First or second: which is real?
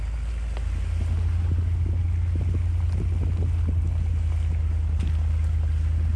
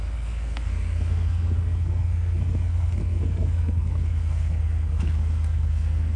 first